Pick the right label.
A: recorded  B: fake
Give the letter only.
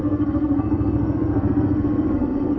B